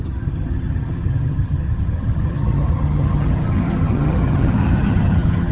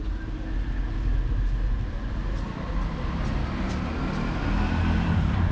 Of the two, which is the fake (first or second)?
first